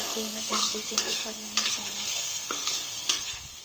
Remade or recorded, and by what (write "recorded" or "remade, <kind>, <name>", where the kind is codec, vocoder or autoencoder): remade, codec, SNAC